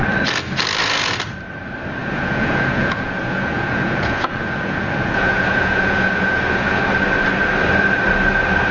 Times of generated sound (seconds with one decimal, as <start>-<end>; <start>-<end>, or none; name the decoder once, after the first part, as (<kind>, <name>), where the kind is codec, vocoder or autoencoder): 2.0-6.8 (vocoder, Vocos)